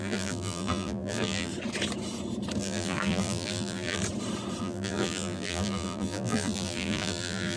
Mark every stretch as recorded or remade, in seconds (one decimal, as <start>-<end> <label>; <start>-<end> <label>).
0.0-1.5 remade; 1.5-2.6 recorded; 2.6-4.0 remade; 4.0-4.6 recorded; 4.6-7.6 remade